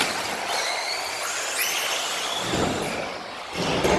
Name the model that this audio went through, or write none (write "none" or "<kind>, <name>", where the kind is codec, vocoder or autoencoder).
none